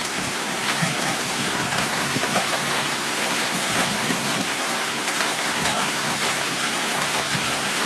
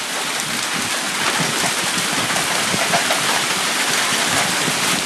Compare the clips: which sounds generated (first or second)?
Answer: first